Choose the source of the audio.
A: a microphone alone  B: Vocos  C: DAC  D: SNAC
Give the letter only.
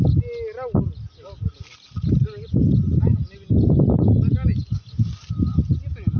A